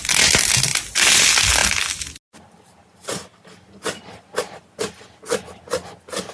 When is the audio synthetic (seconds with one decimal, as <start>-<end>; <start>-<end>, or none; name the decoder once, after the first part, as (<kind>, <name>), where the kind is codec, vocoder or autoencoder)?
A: none